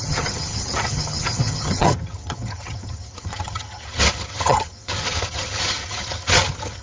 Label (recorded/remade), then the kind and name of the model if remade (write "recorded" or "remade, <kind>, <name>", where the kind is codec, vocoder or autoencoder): remade, vocoder, HiFi-GAN